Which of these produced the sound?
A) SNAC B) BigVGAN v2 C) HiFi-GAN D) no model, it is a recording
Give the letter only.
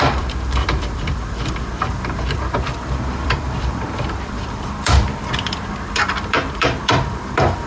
B